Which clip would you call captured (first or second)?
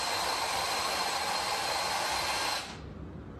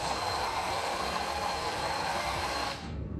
first